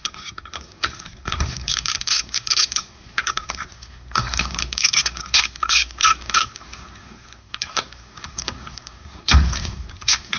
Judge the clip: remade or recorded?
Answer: remade